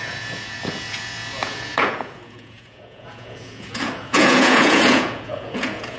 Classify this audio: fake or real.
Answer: fake